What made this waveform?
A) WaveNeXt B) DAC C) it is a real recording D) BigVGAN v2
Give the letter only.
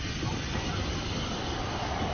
C